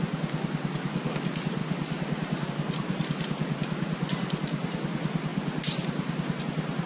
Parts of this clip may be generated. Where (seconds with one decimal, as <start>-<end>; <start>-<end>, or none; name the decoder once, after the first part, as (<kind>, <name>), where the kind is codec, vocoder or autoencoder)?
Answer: none